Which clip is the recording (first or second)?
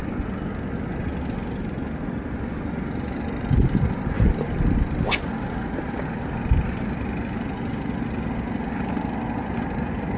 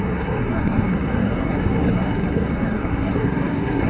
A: first